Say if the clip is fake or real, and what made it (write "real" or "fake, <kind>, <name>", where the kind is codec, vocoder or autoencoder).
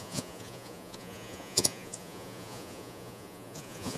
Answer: fake, vocoder, Vocos